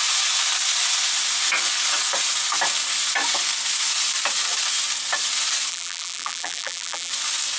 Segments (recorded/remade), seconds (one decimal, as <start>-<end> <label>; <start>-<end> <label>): 0.0-5.7 recorded; 5.7-7.1 remade; 7.1-7.6 recorded